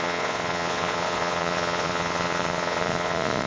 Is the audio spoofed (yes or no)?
yes